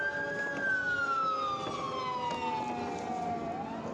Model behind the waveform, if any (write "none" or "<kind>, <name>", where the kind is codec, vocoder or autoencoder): none